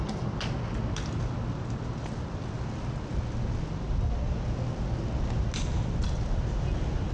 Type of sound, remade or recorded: recorded